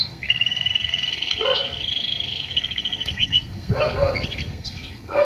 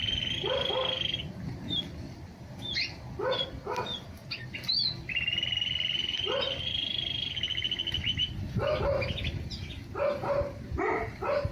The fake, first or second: first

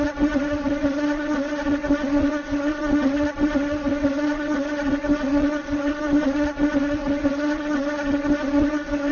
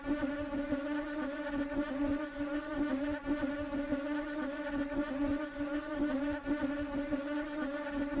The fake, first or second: first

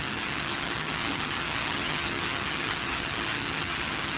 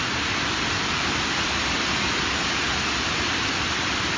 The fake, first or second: first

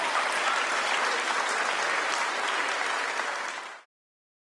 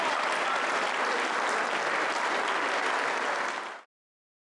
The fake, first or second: first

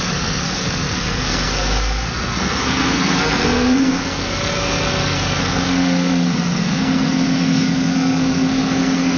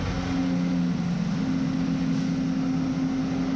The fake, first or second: first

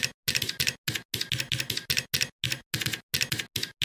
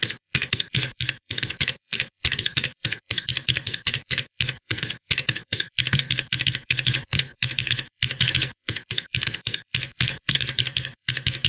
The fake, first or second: second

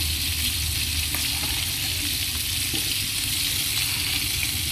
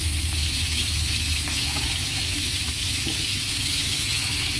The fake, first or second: second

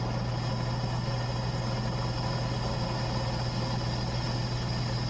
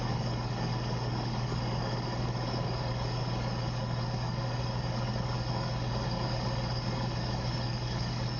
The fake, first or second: second